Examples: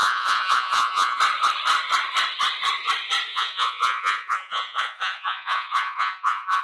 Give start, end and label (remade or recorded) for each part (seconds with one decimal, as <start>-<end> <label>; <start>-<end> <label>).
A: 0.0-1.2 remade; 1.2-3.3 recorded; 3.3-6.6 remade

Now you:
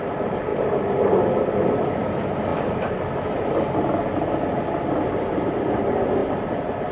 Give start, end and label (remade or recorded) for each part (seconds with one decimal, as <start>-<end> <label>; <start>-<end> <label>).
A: 0.0-0.5 recorded; 0.5-1.9 remade; 1.9-2.5 recorded; 2.5-4.5 remade; 4.5-6.2 recorded; 6.2-6.9 remade

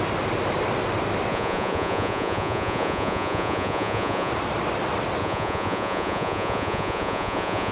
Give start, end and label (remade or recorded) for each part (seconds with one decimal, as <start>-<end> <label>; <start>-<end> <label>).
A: 0.0-1.3 recorded; 1.3-4.3 remade; 4.3-5.2 recorded; 5.2-7.7 remade